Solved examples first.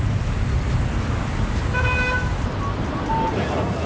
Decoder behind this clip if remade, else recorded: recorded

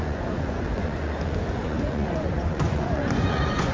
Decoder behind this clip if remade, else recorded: remade, vocoder, Vocos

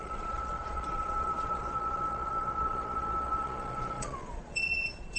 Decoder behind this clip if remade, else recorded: remade, vocoder, Vocos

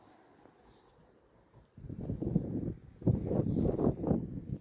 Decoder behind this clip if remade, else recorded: recorded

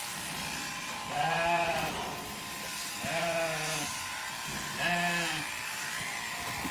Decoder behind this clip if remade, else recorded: recorded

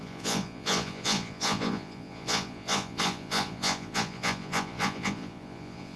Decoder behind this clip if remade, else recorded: remade, vocoder, Vocos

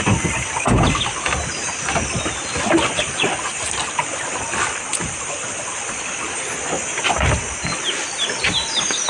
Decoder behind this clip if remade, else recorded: recorded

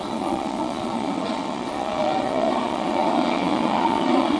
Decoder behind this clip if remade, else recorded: remade, vocoder, Vocos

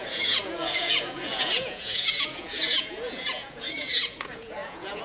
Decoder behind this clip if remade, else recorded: remade, vocoder, Vocos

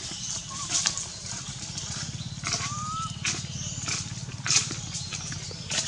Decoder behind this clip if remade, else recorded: recorded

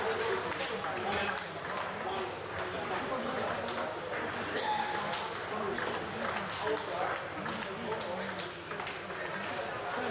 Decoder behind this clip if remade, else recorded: recorded